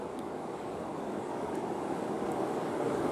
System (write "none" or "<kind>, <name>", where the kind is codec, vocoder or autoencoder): codec, DAC